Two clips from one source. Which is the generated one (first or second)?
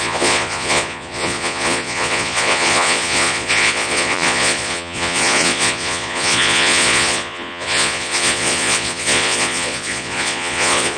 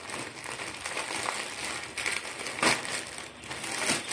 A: first